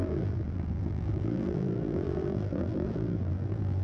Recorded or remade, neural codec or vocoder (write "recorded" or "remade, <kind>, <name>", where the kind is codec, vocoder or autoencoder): remade, vocoder, BigVGAN v2